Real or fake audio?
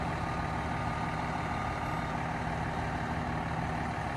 real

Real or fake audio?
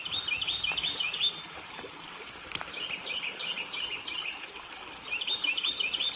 fake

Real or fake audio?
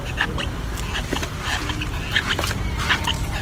real